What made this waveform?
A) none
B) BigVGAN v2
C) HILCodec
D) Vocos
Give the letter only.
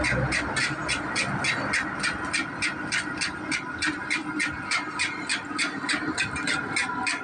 A